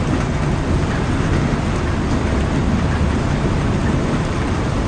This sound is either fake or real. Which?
fake